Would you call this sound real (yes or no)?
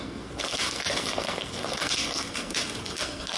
no